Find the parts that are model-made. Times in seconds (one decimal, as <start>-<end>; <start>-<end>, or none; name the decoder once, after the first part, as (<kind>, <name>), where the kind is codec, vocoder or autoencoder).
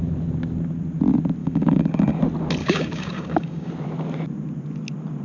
1.4-2.2 (codec, DAC); 2.6-3.7